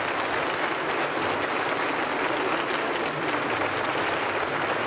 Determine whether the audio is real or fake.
real